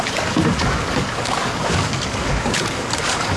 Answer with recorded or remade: remade